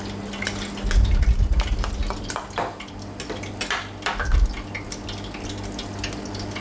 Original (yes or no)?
yes